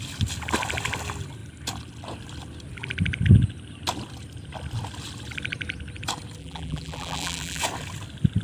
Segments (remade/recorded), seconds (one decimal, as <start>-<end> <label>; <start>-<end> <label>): 0.0-6.4 recorded; 6.4-7.6 remade; 7.6-8.4 recorded

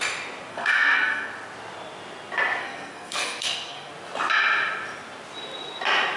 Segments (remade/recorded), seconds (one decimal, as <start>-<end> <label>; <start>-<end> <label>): 0.0-0.5 recorded; 0.5-1.3 remade; 1.3-2.6 recorded; 2.6-3.9 remade; 3.9-6.2 recorded

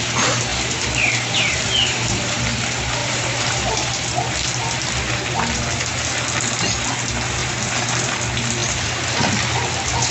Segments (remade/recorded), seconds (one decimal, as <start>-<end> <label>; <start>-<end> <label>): 0.0-0.5 recorded; 0.5-2.4 remade; 2.4-3.0 recorded; 3.0-3.9 remade; 3.9-7.4 recorded; 7.4-8.2 remade; 8.2-8.6 recorded; 8.6-9.3 remade; 9.3-10.1 recorded